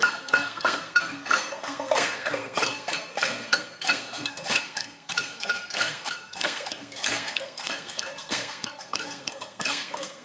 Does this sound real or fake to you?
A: fake